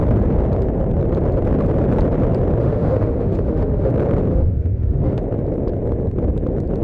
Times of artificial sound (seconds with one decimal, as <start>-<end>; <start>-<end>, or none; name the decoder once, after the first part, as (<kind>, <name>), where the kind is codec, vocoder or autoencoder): 2.6-3.9 (autoencoder, DAC-VAE); 4.3-5.2